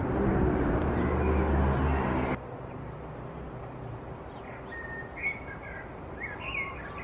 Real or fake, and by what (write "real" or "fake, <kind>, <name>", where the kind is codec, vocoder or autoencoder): real